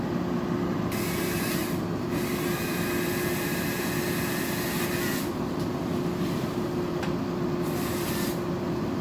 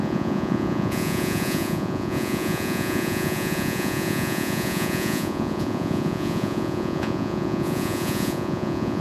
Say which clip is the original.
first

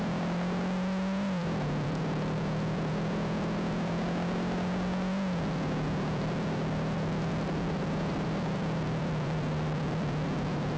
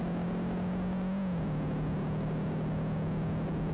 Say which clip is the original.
second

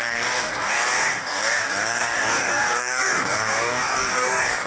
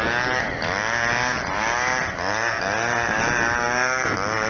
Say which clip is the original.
second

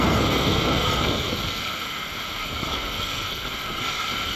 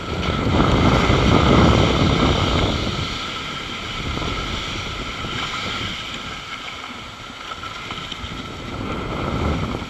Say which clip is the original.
second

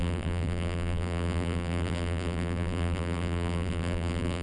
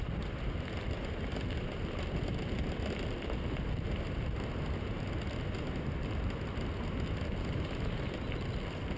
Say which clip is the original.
second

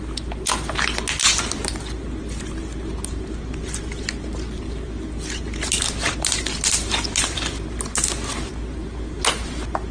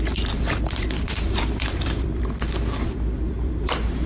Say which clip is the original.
first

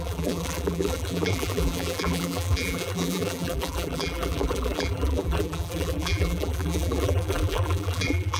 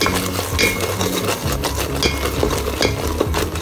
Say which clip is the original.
second